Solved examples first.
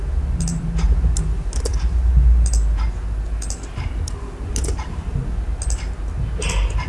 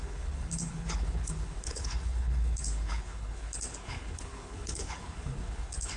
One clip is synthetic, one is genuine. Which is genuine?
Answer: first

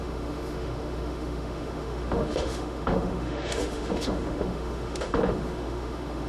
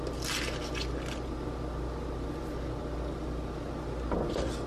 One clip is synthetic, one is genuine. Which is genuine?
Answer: second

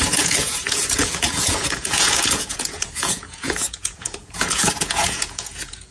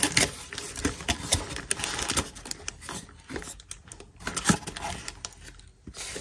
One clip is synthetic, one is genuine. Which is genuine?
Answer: second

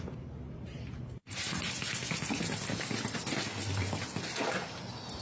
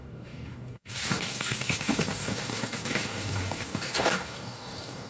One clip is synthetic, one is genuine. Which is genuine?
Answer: first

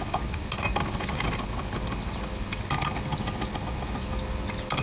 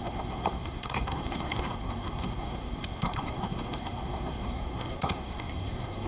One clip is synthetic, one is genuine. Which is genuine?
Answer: first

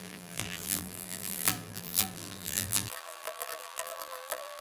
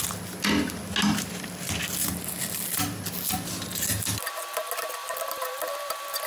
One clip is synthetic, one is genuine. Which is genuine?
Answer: second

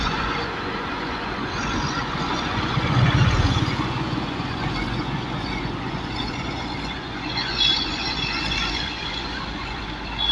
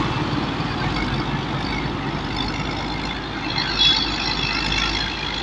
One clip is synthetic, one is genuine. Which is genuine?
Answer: second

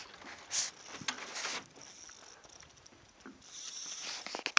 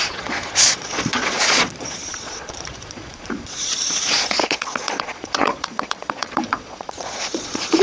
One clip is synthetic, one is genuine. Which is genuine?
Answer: first